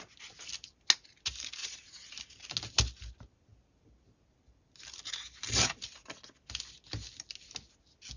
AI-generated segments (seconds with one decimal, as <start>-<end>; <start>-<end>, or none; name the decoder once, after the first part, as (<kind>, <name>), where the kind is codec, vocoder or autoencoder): 1.6-2.2 (vocoder, BigVGAN v2)